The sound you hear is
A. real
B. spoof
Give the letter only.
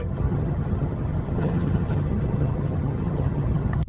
B